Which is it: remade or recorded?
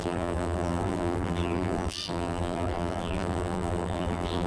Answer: remade